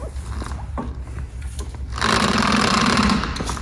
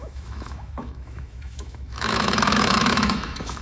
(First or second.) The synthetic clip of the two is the second